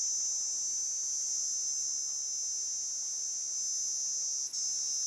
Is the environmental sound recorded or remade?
recorded